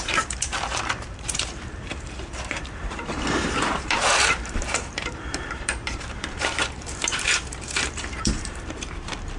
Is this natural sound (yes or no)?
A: no